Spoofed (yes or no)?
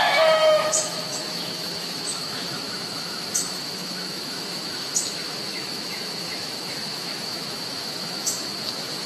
yes